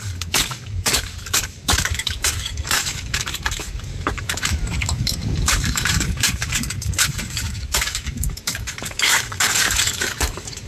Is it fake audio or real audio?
fake